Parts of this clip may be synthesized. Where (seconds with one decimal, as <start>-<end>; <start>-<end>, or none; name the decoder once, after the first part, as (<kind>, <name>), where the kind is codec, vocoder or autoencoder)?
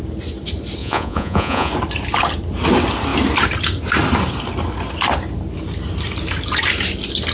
0.8-1.7 (vocoder, Vocos)